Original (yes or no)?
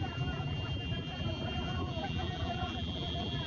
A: no